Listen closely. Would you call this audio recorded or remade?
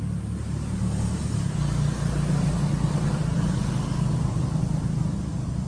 recorded